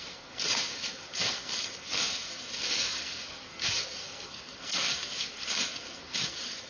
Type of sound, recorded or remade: remade